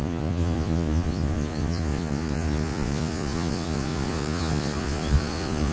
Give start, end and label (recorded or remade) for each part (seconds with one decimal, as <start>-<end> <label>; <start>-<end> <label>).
0.0-5.7 remade